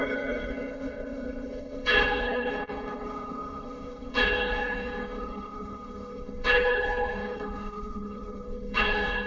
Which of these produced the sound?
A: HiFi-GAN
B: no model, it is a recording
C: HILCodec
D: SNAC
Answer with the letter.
C